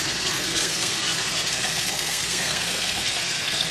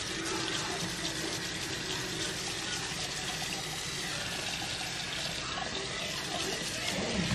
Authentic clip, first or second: second